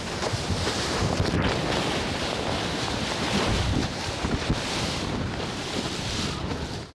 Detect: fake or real fake